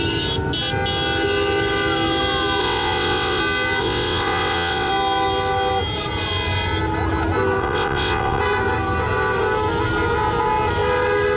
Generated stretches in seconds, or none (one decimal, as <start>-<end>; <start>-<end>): 2.6-3.4; 3.8-4.9; 7.6-8.4